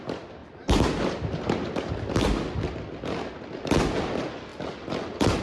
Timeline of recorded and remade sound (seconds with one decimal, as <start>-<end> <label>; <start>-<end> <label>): 0.0-0.4 recorded; 0.4-1.9 remade; 1.9-5.4 recorded